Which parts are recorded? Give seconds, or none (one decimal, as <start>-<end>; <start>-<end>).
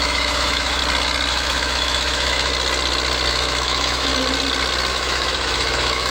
0.8-1.3; 2.5-3.3; 4.1-4.9